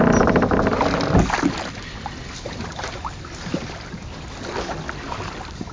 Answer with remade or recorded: recorded